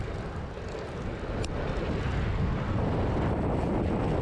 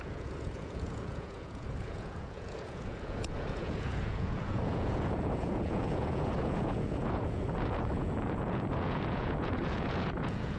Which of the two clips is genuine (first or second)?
first